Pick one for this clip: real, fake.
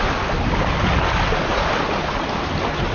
real